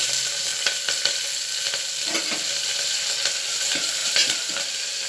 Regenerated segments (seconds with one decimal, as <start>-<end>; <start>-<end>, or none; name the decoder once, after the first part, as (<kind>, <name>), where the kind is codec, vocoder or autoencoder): 0.0-0.5 (vocoder, BigVGAN v2); 3.6-5.1